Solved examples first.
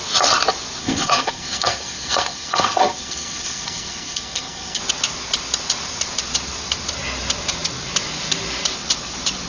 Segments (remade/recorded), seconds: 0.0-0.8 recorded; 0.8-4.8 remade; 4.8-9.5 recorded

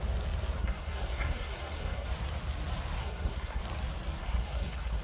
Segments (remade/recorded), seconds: 0.0-0.6 recorded; 0.6-2.1 remade; 2.1-3.0 recorded; 3.0-3.6 remade; 3.6-4.2 recorded; 4.2-5.0 remade

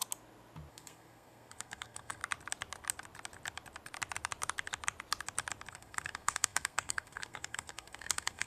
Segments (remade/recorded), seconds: 0.0-0.7 recorded; 0.7-2.2 remade; 2.2-5.7 recorded; 5.7-8.5 remade